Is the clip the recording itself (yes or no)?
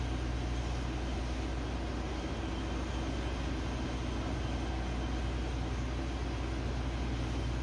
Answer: yes